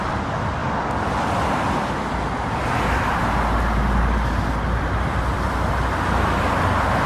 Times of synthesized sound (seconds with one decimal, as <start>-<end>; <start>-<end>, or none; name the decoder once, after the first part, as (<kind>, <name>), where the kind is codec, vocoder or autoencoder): none